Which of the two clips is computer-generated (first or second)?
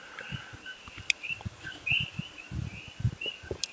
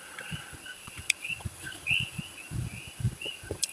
second